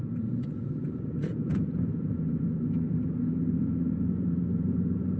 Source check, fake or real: fake